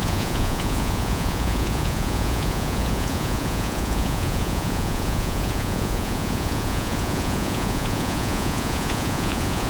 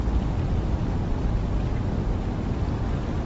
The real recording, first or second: second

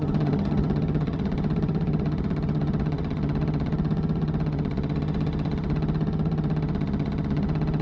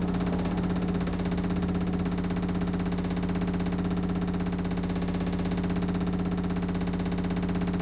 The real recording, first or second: second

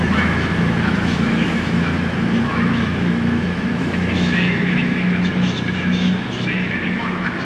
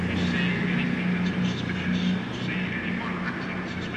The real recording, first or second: second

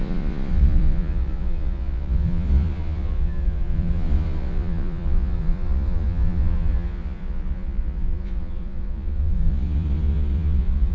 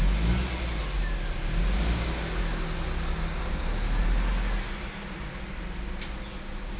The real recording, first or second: second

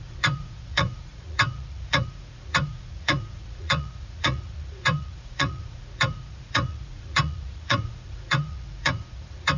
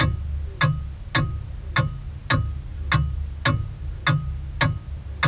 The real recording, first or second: second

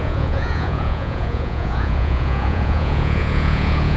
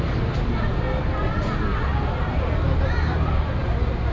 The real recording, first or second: second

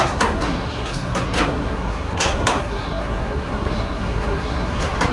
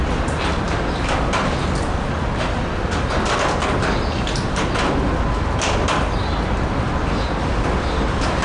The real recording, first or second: second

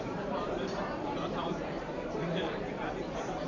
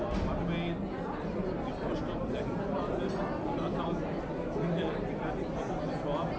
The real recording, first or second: second